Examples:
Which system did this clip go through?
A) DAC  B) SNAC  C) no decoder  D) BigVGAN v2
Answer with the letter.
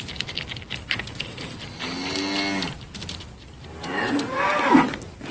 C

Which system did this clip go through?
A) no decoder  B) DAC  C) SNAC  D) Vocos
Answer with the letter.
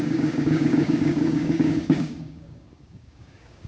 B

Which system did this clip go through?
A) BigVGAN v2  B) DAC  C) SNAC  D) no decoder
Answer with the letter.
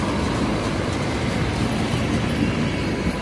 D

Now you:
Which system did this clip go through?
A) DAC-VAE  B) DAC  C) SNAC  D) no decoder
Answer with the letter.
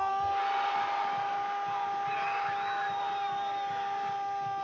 D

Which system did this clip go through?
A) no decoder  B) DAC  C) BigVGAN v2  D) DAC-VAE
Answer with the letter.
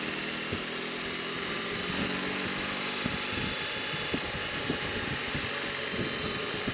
A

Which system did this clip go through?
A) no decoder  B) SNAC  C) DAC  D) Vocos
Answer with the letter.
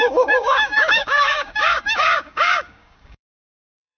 C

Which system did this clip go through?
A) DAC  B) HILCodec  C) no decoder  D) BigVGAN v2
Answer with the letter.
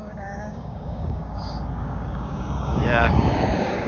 A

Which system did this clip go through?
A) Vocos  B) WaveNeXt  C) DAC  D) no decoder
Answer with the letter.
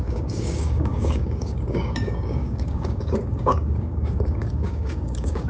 C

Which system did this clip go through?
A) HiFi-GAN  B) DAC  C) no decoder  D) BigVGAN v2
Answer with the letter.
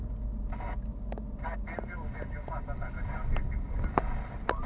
C